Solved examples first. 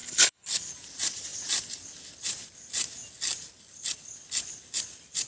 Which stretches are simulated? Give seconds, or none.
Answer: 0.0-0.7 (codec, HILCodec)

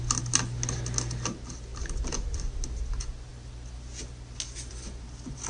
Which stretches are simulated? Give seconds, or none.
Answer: none

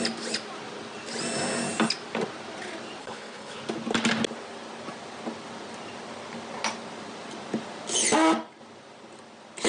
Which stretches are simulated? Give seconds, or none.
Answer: 3.0-3.6 (codec, HILCodec)

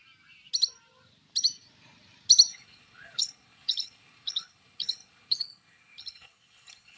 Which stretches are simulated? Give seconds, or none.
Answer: 2.5-7.0 (codec, HILCodec)

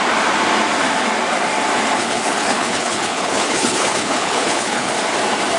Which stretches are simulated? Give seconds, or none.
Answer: 2.0-4.9 (codec, HILCodec)

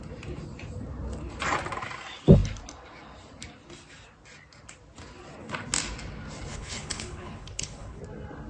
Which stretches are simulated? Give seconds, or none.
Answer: 6.5-8.0 (codec, HILCodec)